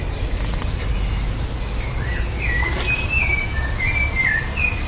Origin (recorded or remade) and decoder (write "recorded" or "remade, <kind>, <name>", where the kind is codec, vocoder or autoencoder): recorded